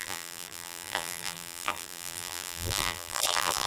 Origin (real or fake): fake